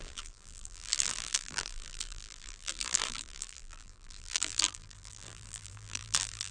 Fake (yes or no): yes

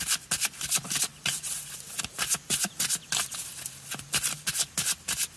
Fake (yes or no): no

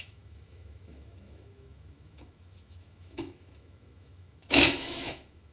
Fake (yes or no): yes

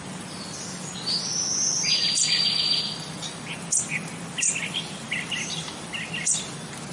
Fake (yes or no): no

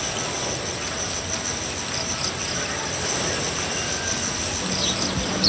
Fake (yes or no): no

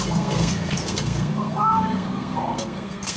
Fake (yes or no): yes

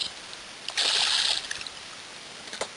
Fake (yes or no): no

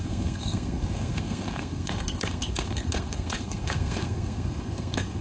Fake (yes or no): yes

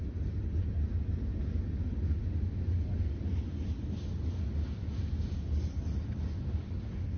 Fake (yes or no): no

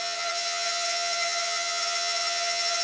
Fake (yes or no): yes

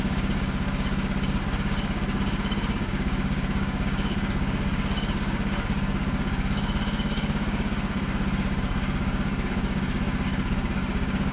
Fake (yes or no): yes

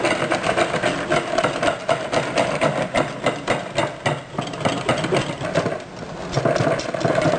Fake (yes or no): no